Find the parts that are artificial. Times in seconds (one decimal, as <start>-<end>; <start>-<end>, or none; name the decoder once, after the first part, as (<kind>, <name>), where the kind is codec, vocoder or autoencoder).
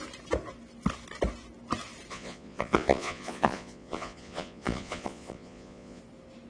2.1-6.0 (vocoder, Vocos)